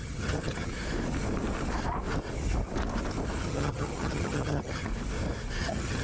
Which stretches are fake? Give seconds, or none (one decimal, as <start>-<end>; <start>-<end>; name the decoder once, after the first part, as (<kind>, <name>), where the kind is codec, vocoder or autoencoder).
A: 0.0-0.7 (vocoder, HiFi-GAN); 3.4-4.9; 5.6-6.0